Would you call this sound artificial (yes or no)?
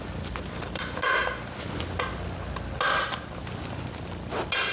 no